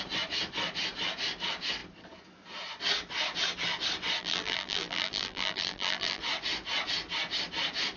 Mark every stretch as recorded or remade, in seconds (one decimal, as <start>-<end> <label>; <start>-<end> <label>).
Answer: 0.0-4.2 recorded; 4.2-6.2 remade; 6.2-8.0 recorded